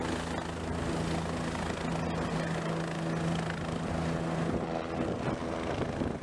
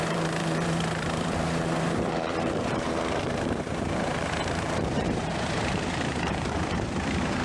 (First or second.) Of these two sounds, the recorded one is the first